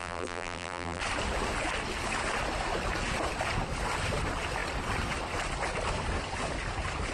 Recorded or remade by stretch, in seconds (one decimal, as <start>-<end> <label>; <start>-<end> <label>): 0.0-1.0 remade; 1.0-7.1 recorded